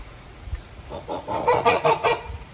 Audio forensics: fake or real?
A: fake